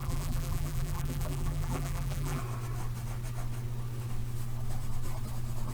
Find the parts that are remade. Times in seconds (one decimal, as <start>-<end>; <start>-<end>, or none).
0.0-2.4